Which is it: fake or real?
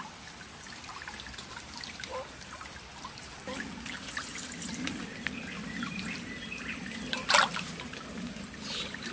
real